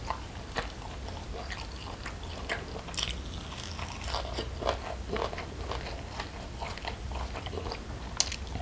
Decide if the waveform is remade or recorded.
recorded